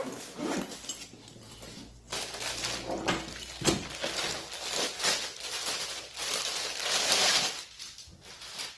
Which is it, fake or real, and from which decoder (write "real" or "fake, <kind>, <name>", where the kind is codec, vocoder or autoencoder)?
real